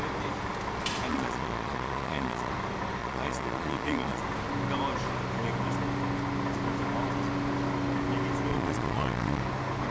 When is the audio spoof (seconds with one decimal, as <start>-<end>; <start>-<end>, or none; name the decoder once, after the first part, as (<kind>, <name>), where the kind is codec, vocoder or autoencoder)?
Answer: 1.1-2.5 (vocoder, Vocos); 3.0-4.2; 8.5-9.4